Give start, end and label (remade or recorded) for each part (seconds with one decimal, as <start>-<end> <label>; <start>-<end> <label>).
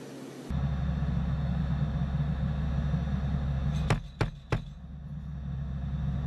0.0-6.3 recorded